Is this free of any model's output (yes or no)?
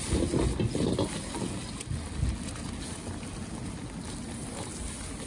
yes